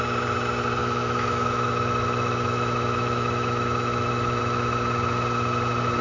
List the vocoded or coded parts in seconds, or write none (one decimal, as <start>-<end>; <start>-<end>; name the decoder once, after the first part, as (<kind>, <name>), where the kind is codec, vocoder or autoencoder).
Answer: 0.8-4.4 (autoencoder, DAC-VAE)